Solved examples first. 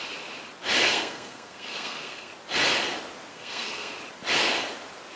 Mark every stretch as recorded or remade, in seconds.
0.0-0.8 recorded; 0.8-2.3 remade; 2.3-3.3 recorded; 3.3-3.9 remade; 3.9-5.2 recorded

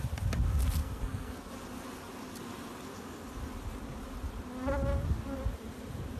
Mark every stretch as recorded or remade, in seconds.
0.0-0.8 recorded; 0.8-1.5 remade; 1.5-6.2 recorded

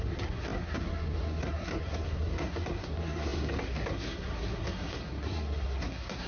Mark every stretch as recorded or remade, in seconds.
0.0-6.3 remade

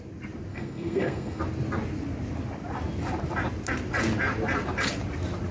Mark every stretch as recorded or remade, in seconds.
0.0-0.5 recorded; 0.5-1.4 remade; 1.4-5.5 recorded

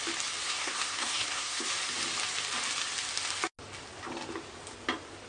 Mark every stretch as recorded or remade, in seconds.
0.0-0.4 recorded; 0.4-1.7 remade; 1.7-5.3 recorded